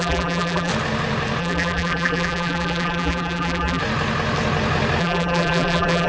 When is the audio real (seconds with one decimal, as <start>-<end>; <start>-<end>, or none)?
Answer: 0.7-1.4; 3.8-5.0